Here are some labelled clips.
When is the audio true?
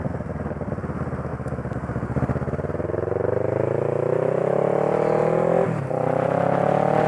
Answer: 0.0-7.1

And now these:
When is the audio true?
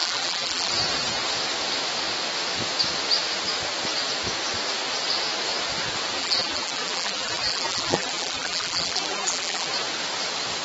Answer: 0.7-6.2; 9.7-10.6